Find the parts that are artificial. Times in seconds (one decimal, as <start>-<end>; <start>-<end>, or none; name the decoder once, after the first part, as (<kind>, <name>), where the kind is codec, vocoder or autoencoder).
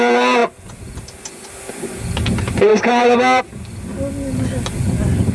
none